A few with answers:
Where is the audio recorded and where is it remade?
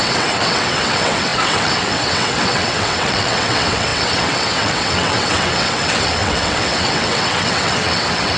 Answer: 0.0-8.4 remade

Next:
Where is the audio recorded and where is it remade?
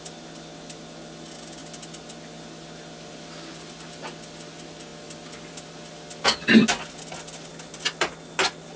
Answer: 0.0-8.8 recorded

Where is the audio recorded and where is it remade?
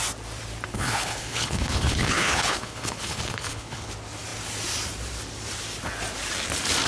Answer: 0.0-0.7 recorded; 0.7-3.9 remade; 3.9-6.9 recorded